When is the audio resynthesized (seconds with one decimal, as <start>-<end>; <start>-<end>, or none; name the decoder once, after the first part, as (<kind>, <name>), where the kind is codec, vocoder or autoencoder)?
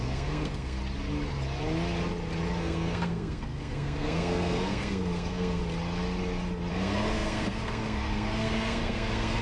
0.0-0.8 (codec, SNAC); 2.6-5.6; 6.7-9.4